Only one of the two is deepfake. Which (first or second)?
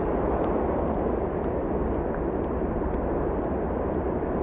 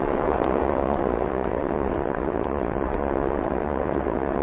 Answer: second